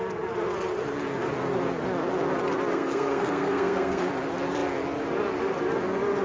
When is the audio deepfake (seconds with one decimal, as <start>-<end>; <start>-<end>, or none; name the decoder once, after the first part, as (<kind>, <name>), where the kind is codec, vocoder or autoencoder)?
2.7-4.1 (codec, SNAC)